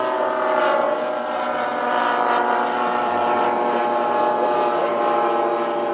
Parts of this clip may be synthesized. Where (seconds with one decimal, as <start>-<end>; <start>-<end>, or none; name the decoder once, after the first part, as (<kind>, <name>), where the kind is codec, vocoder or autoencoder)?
none